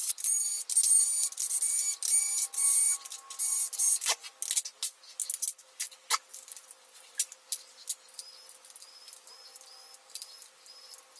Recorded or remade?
recorded